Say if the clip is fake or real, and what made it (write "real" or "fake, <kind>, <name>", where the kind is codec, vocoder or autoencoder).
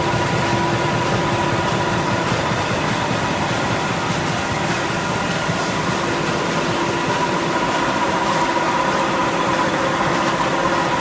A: real